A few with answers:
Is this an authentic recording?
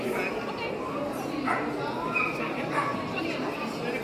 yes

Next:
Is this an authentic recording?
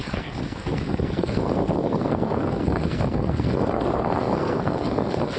no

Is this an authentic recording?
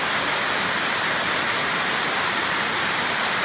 yes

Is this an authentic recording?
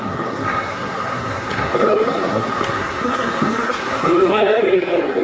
no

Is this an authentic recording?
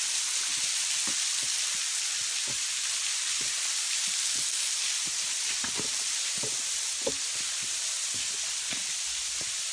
yes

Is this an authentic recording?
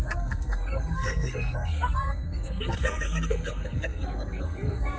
no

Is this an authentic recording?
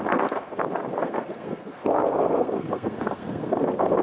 no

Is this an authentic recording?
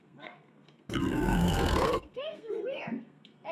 no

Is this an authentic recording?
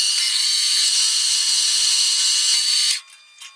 yes